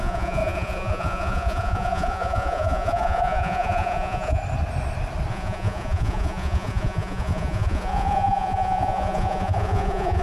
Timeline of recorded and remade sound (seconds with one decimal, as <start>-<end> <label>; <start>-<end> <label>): 0.0-4.4 remade; 4.4-5.3 recorded; 5.3-10.2 remade